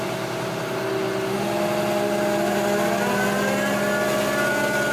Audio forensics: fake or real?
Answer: real